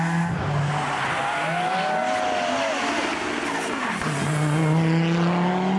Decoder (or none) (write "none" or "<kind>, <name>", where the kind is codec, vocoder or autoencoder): none